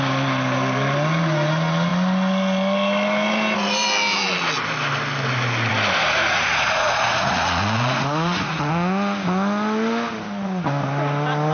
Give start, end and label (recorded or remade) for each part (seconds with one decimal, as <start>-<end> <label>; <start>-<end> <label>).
0.0-6.2 recorded; 6.2-8.7 remade; 8.7-11.5 recorded